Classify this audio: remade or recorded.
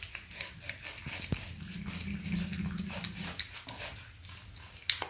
recorded